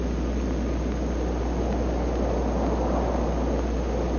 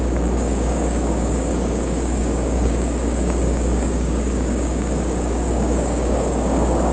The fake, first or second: second